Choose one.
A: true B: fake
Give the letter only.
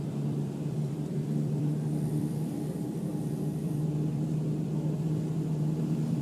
B